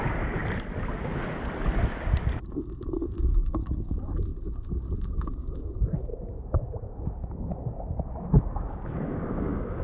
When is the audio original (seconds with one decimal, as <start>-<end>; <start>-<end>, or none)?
0.4-2.0; 4.3-5.3